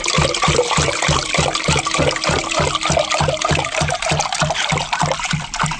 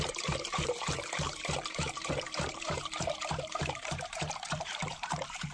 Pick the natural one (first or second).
first